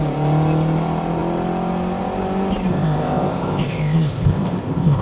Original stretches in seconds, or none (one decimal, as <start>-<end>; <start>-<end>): 0.0-2.7